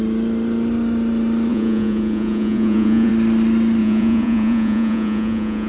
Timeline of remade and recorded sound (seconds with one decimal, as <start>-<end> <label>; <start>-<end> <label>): 0.0-1.5 recorded; 1.5-3.1 remade; 3.1-3.8 recorded; 3.8-5.7 remade